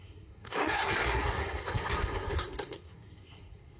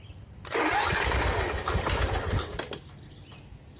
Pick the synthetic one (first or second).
first